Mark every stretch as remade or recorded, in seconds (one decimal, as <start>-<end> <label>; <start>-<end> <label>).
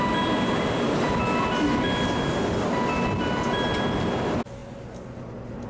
0.0-5.7 recorded